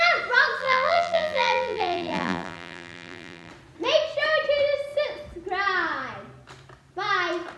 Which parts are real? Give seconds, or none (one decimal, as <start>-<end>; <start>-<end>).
0.0-0.6; 3.5-7.6